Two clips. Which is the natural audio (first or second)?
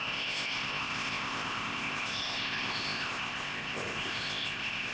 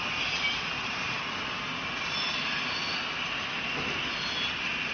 second